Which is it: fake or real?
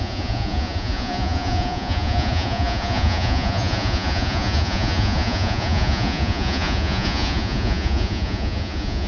fake